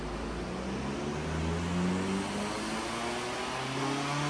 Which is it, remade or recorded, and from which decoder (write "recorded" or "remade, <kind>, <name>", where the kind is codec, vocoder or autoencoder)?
recorded